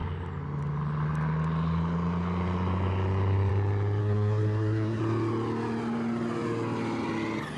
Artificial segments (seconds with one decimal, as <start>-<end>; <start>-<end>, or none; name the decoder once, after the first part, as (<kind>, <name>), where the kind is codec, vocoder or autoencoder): 4.0-5.0 (codec, SNAC)